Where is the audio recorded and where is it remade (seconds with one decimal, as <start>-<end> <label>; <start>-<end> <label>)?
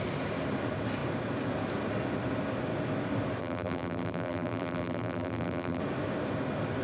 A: 0.0-3.4 recorded; 3.4-5.8 remade; 5.8-6.8 recorded